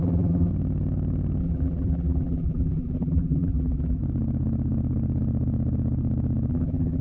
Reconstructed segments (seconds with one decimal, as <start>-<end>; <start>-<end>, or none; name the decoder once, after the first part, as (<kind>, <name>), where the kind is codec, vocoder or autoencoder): 0.0-0.5 (vocoder, BigVGAN v2); 1.4-4.0; 6.5-7.0